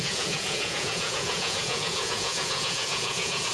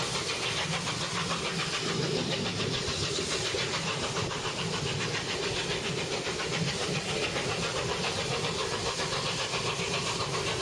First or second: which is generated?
first